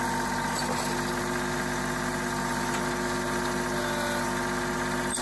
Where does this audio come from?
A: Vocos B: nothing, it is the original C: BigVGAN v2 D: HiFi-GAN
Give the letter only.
B